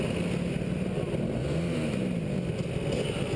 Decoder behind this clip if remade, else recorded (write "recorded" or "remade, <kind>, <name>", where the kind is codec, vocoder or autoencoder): recorded